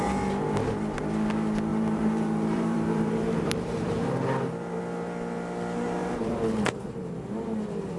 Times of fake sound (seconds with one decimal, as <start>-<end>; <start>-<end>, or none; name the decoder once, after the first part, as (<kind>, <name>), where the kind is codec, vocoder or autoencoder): 1.7-4.8 (vocoder, BigVGAN v2); 6.0-7.1